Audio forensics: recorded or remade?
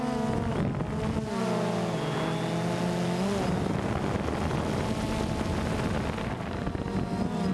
recorded